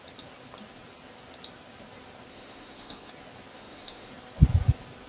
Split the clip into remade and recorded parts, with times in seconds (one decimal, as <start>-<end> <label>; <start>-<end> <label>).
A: 0.0-2.3 recorded; 2.3-3.1 remade; 3.1-3.5 recorded; 3.5-4.1 remade; 4.1-5.1 recorded